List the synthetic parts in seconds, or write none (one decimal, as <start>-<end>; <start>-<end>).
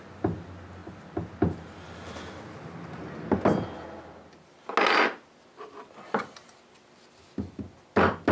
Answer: none